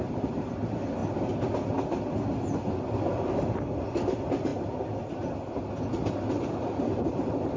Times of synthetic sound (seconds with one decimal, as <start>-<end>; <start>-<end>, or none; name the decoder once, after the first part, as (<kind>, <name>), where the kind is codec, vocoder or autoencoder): none